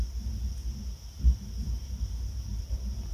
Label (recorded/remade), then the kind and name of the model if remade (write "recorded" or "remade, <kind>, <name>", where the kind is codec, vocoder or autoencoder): recorded